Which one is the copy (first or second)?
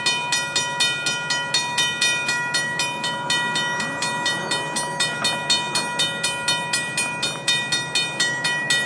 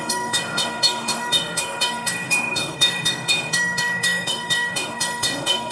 second